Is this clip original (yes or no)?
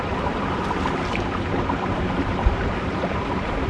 yes